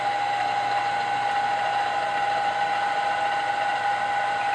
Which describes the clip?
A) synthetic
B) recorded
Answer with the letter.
B